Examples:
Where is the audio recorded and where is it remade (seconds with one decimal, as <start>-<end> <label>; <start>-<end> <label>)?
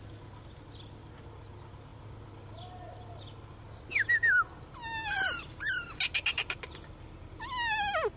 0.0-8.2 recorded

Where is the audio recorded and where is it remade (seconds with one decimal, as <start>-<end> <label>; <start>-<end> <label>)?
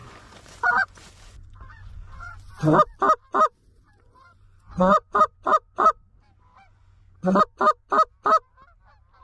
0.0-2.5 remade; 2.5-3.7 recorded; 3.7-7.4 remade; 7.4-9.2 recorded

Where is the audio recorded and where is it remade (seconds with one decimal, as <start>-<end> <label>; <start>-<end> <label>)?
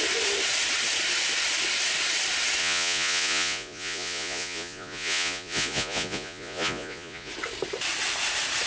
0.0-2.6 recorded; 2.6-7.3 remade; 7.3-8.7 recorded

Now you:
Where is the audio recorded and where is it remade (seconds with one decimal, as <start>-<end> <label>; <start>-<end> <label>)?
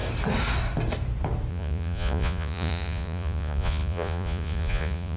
0.0-1.5 recorded; 1.5-5.2 remade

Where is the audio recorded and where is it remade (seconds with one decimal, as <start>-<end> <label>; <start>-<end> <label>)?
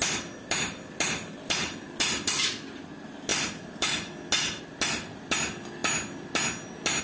0.0-7.0 recorded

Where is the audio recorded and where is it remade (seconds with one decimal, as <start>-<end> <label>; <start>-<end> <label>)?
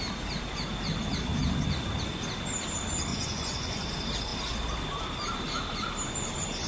0.0-3.1 recorded; 3.1-3.9 remade; 3.9-6.7 recorded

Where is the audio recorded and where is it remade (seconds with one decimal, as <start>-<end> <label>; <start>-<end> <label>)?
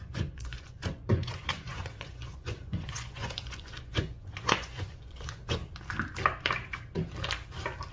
0.0-5.6 remade; 5.6-7.9 recorded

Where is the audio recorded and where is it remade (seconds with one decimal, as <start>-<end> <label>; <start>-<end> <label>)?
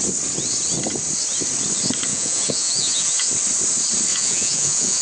0.0-2.1 recorded; 2.1-3.3 remade; 3.3-4.1 recorded; 4.1-5.0 remade